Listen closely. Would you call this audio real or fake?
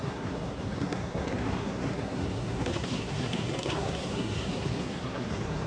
fake